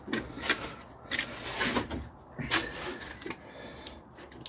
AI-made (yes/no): no